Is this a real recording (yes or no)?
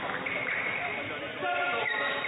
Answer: yes